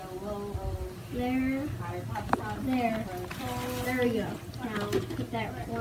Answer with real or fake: real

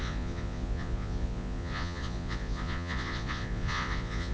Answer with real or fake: fake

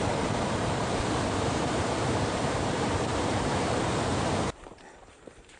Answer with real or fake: fake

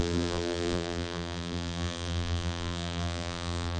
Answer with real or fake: fake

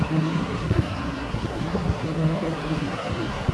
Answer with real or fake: fake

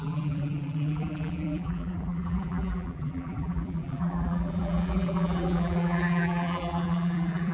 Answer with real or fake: fake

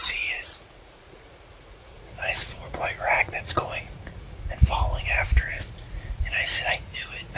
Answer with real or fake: fake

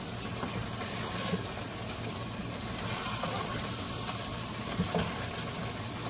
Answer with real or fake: real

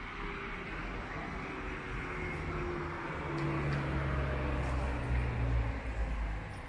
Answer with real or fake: real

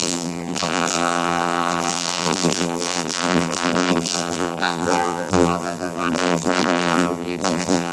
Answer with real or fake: fake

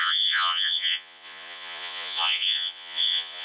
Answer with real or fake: fake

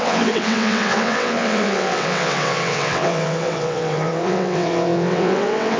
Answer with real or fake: fake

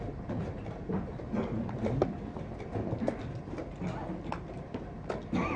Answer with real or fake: real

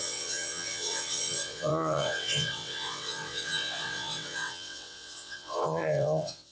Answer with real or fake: fake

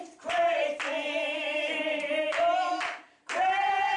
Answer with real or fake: fake